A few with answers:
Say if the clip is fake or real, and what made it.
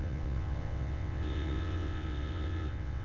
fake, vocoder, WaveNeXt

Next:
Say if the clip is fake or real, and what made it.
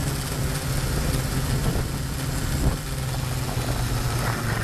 real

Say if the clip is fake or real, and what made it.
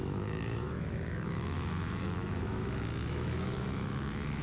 fake, autoencoder, DAC-VAE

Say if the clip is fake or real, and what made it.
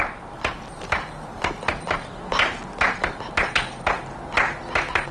real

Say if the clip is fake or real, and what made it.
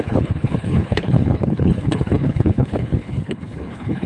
fake, codec, HILCodec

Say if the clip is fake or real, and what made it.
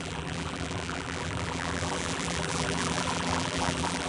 fake, vocoder, BigVGAN v2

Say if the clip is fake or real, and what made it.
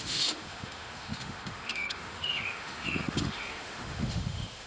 fake, autoencoder, DAC-VAE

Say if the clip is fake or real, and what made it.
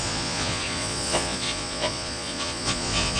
fake, vocoder, Vocos